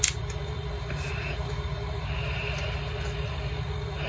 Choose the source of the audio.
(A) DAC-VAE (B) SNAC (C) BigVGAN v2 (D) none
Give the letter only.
D